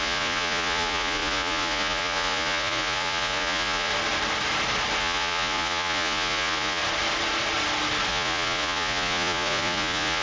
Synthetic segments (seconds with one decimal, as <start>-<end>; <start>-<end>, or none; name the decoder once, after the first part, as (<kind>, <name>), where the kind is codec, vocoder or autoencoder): 0.0-3.9 (vocoder, Vocos); 5.0-6.8; 8.1-10.2